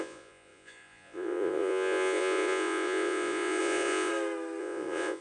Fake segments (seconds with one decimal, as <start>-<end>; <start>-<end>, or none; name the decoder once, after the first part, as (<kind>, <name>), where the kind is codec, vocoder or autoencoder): 0.0-4.1 (vocoder, Vocos); 4.6-5.2